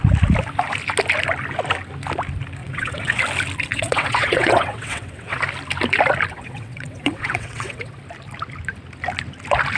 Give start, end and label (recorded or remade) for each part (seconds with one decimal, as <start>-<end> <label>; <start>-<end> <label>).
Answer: 0.0-2.6 recorded; 2.6-3.2 remade; 3.2-3.7 recorded; 3.7-5.4 remade; 5.4-6.3 recorded; 6.3-8.0 remade; 8.0-9.8 recorded